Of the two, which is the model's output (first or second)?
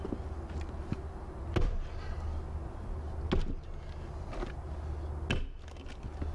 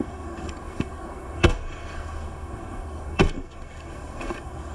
second